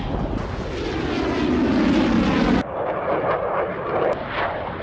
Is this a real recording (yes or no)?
yes